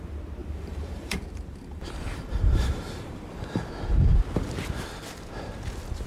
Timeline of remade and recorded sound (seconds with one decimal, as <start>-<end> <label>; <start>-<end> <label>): 0.0-0.4 recorded; 0.4-3.7 remade; 3.7-6.1 recorded